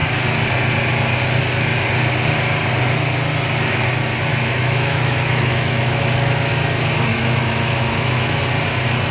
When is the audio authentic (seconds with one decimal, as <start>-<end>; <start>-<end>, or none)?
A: 0.0-4.3; 6.5-7.1; 8.4-9.1